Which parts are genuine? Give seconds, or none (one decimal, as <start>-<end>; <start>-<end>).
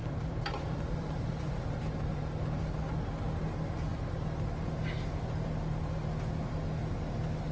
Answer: 2.6-7.5